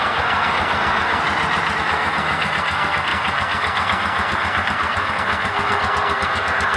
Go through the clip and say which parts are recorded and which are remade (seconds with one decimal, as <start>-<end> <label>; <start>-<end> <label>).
0.0-1.2 remade; 1.2-1.8 recorded; 1.8-6.8 remade